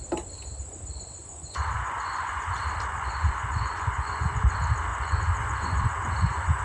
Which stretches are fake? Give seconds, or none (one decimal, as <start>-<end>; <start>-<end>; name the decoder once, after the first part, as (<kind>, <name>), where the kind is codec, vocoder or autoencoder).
1.2-2.4 (vocoder, Vocos); 2.9-4.5; 4.9-6.6